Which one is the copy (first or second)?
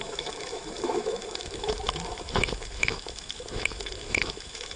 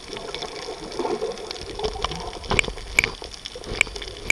first